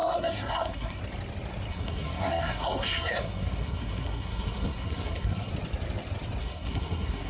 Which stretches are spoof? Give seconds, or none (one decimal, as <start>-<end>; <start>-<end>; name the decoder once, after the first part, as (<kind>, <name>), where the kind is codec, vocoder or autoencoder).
0.0-1.0 (codec, SNAC); 1.7-5.5; 6.4-7.3